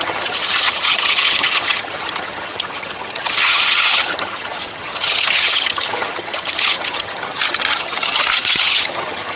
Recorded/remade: remade